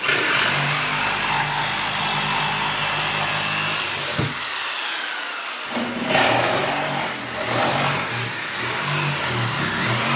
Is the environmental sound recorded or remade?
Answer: recorded